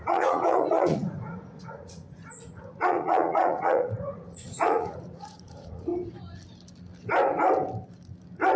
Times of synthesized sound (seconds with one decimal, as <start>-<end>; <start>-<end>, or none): 0.0-5.9